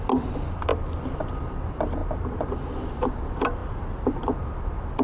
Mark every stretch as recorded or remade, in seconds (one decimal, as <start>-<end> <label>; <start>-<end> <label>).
0.0-5.0 recorded

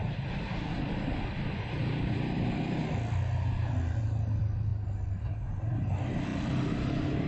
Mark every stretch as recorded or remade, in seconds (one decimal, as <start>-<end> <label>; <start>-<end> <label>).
0.0-7.3 recorded

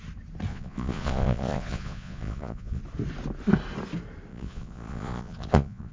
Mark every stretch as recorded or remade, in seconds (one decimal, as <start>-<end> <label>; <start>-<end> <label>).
0.0-0.5 recorded; 0.5-2.8 remade; 2.8-4.3 recorded; 4.3-5.9 remade

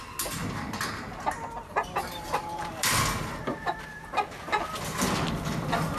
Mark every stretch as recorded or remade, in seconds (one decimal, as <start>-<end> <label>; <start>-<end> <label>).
0.0-6.0 recorded

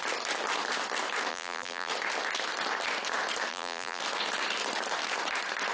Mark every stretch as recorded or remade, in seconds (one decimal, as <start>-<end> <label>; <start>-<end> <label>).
0.0-1.3 recorded; 1.3-1.9 remade; 1.9-3.5 recorded; 3.5-4.0 remade; 4.0-5.7 recorded